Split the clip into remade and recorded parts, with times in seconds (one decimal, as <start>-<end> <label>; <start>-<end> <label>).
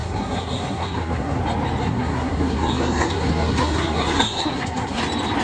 0.0-1.4 remade; 1.4-1.8 recorded; 1.8-5.0 remade; 5.0-5.4 recorded